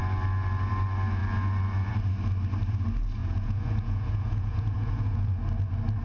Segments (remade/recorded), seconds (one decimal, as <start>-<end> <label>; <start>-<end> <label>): 0.0-3.2 recorded; 3.2-5.4 remade; 5.4-6.0 recorded